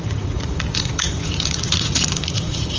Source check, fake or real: fake